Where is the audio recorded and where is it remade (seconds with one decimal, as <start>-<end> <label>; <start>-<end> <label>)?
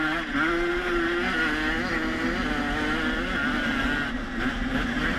0.0-5.2 recorded